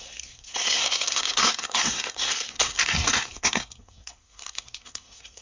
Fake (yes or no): yes